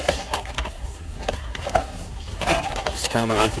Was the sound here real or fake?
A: fake